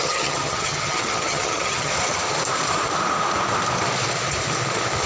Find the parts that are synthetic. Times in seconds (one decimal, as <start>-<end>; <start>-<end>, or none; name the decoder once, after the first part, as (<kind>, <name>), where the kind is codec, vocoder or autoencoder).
0.0-1.9 (vocoder, HiFi-GAN)